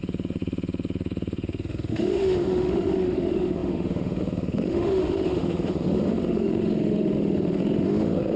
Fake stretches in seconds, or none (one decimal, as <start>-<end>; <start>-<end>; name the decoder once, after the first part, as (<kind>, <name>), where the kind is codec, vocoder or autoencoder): 0.0-8.4 (autoencoder, DAC-VAE)